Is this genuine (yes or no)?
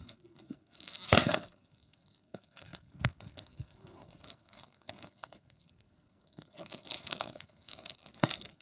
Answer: no